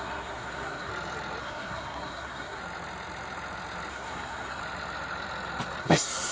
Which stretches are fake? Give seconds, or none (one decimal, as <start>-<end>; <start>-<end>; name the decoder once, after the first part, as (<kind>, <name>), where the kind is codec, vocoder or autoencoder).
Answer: 0.0-0.9 (codec, SNAC); 1.4-2.6; 3.9-4.6; 5.8-6.3